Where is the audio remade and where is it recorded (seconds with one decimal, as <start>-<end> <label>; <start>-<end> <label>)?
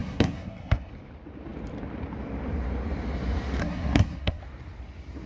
0.0-0.9 remade; 0.9-3.6 recorded; 3.6-4.4 remade; 4.4-5.3 recorded